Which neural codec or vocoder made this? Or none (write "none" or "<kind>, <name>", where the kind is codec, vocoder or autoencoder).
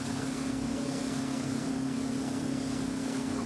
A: codec, SNAC